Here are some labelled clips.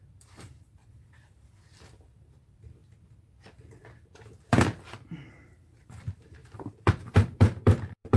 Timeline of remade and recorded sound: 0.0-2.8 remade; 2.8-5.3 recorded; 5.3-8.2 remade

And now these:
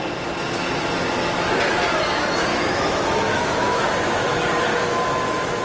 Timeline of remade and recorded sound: 0.0-2.5 recorded; 2.5-3.9 remade; 3.9-4.7 recorded; 4.7-5.6 remade

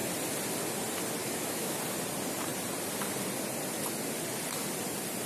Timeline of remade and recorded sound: 0.0-1.2 recorded; 1.2-1.8 remade; 1.8-5.3 recorded

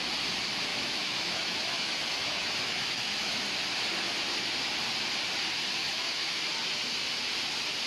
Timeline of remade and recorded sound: 0.0-0.7 recorded; 0.7-3.4 remade; 3.4-5.8 recorded; 5.8-6.4 remade; 6.4-7.9 recorded